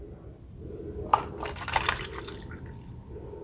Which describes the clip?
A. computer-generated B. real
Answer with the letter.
B